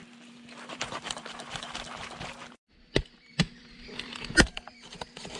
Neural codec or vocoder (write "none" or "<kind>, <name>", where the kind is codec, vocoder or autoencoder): vocoder, BigVGAN v2